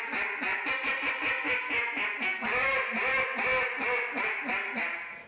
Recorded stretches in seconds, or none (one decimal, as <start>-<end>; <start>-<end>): 0.0-0.5; 1.1-5.3